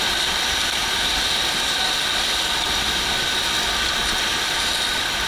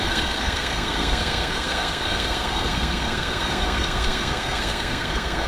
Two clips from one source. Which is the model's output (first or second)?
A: second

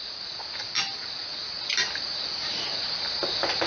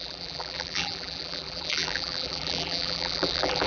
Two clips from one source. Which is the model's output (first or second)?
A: second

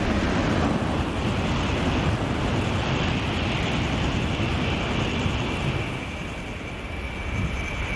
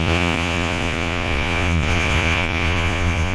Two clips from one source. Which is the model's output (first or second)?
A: second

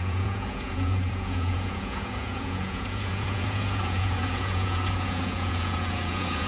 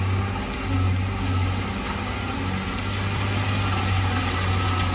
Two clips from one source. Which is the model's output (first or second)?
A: first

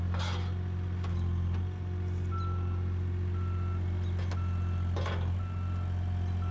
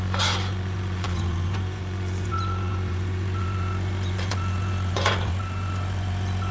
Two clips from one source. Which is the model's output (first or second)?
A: second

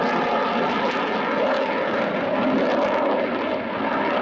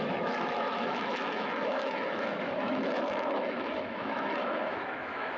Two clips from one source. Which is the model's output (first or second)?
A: second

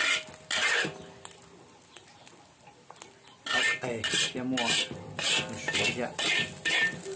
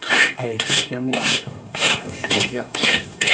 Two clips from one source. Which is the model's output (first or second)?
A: second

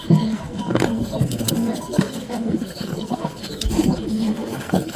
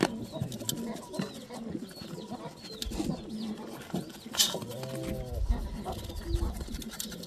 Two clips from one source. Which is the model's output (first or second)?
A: first